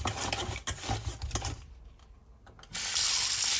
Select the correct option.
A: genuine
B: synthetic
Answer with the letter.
A